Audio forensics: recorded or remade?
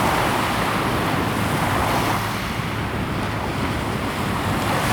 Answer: recorded